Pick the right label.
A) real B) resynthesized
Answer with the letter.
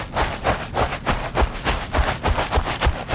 A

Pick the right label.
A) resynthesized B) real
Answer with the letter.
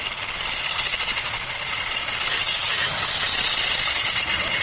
B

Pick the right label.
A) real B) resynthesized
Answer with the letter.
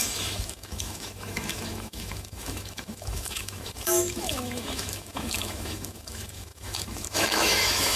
B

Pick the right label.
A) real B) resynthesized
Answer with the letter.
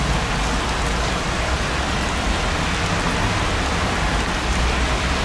A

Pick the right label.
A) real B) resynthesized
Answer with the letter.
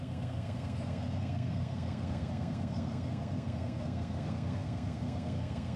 B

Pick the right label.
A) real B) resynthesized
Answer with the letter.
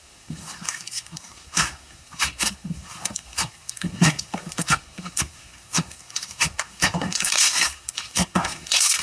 B